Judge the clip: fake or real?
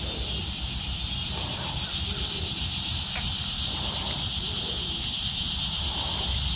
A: real